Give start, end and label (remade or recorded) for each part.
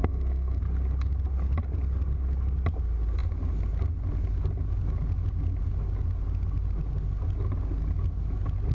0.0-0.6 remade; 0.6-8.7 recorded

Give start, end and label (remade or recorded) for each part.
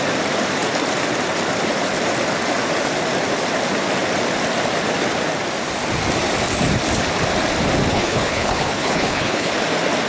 0.0-7.9 recorded; 7.9-9.5 remade; 9.5-10.1 recorded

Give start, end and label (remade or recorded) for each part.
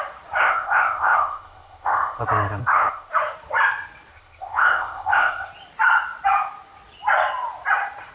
0.0-0.4 recorded; 0.4-2.2 remade; 2.2-2.6 recorded; 2.6-3.1 remade; 3.1-4.1 recorded; 4.1-5.5 remade; 5.5-8.1 recorded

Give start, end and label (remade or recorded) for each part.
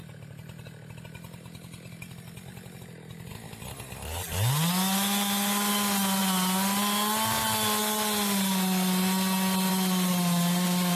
0.0-10.9 recorded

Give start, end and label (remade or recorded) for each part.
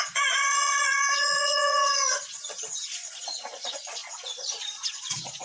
0.0-5.4 remade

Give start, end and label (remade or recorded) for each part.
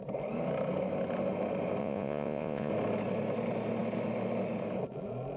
0.0-1.8 recorded; 1.8-2.7 remade; 2.7-5.4 recorded